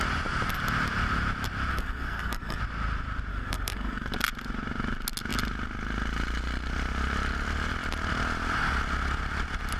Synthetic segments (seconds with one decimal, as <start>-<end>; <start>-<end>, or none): 1.7-2.6; 3.3-4.1